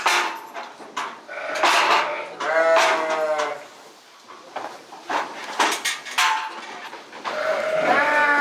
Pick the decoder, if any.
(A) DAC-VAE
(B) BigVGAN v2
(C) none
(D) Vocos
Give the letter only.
C